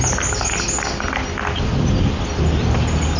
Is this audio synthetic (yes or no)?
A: no